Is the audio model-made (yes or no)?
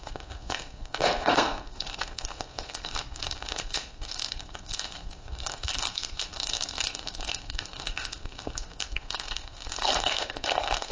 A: yes